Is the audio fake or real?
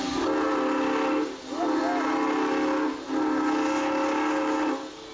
real